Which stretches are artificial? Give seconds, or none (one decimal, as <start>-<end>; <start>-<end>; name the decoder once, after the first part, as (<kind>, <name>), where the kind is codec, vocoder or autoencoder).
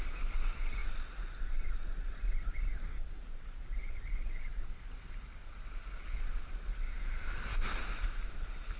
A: none